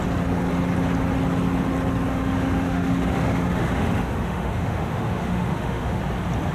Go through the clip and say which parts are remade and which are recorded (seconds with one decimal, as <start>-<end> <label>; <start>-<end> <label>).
0.0-2.1 recorded; 2.1-6.0 remade; 6.0-6.5 recorded